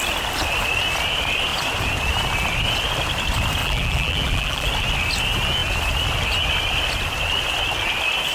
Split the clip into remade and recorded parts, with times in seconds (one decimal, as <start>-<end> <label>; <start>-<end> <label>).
0.0-3.6 recorded; 3.6-4.7 remade; 4.7-8.3 recorded